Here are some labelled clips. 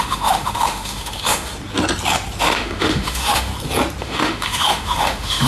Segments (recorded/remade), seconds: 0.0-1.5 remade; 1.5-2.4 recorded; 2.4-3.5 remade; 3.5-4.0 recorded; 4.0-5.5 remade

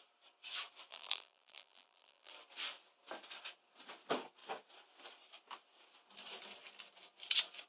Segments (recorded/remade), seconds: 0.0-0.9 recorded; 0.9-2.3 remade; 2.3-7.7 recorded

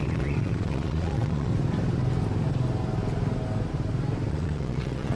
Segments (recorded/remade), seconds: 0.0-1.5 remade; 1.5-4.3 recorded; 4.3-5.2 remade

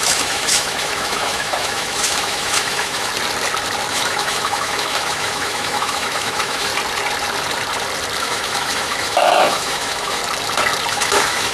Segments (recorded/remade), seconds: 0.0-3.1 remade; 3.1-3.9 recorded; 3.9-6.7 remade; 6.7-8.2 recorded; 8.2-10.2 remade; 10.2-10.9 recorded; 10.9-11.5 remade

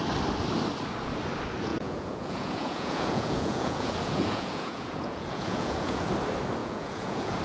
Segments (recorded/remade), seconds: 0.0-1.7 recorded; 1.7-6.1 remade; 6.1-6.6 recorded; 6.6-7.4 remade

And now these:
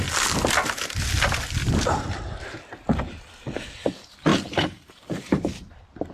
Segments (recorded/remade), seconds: 0.0-1.6 recorded; 1.6-2.6 remade; 2.6-4.3 recorded; 4.3-6.1 remade